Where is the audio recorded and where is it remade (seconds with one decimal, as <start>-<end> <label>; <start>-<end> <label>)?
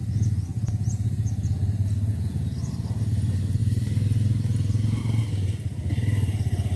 0.0-0.5 recorded; 0.5-2.7 remade; 2.7-6.8 recorded